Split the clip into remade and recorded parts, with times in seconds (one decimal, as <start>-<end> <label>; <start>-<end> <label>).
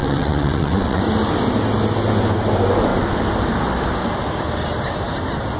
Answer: 0.0-1.0 remade; 1.0-5.6 recorded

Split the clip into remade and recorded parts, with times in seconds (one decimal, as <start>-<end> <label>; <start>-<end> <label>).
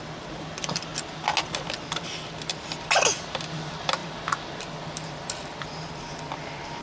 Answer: 0.0-6.8 recorded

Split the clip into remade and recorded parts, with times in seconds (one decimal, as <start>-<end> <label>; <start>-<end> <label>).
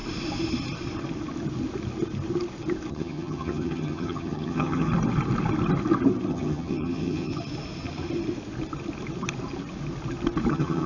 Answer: 0.0-2.9 recorded; 2.9-4.9 remade; 4.9-6.3 recorded; 6.3-7.3 remade; 7.3-10.5 recorded; 10.5-10.9 remade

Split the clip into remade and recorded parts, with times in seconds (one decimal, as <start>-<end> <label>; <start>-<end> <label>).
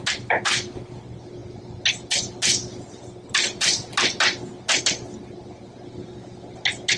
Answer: 0.0-7.0 recorded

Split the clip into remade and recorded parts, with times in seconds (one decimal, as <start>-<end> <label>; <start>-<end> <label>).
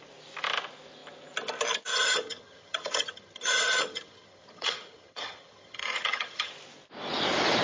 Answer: 0.0-1.9 recorded; 1.9-6.5 remade; 6.5-7.6 recorded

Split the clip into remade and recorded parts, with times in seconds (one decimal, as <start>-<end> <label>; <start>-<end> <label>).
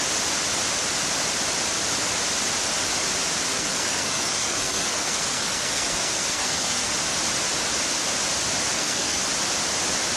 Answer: 0.0-3.5 recorded; 3.5-6.9 remade; 6.9-8.7 recorded; 8.7-9.2 remade; 9.2-10.2 recorded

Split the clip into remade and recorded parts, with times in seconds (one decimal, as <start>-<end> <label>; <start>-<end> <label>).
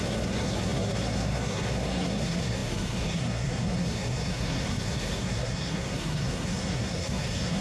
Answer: 0.0-7.6 remade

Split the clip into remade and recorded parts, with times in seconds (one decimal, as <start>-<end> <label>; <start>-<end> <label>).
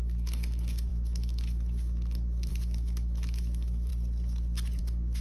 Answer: 0.0-3.9 remade; 3.9-4.8 recorded; 4.8-5.2 remade